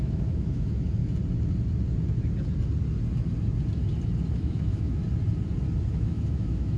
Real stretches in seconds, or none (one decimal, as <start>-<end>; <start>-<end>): 1.0-4.3; 5.0-5.9